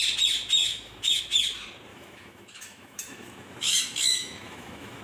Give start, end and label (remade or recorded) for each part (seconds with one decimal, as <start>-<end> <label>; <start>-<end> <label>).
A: 0.0-0.6 recorded; 0.6-1.2 remade; 1.2-1.9 recorded; 1.9-5.0 remade